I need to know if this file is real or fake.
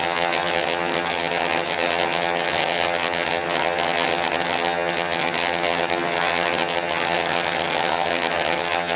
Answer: fake